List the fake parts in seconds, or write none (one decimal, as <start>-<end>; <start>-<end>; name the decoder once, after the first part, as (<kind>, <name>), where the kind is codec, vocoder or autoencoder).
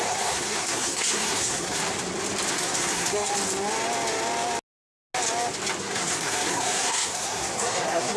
0.0-1.8 (codec, SNAC); 2.5-3.3; 5.8-8.2